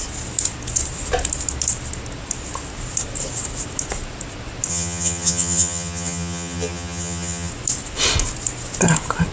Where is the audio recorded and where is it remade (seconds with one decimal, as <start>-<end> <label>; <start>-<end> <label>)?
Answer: 0.0-4.7 recorded; 4.7-7.5 remade; 7.5-9.3 recorded